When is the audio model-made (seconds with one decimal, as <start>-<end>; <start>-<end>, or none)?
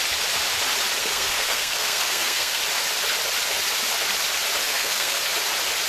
1.0-2.6; 4.6-5.2